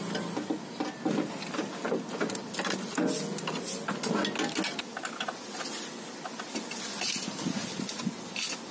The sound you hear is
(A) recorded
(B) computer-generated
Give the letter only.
A